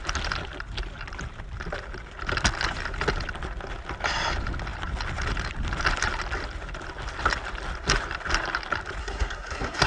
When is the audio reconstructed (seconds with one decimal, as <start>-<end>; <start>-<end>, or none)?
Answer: 9.0-9.9